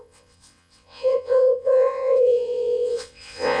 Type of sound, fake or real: fake